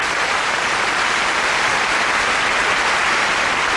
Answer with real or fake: real